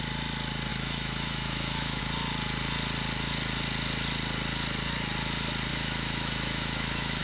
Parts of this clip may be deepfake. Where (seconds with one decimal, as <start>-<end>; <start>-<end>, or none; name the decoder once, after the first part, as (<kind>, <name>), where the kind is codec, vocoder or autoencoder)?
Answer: 0.7-2.0 (autoencoder, DAC-VAE); 5.7-7.2